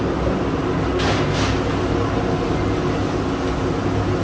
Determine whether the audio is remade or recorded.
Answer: recorded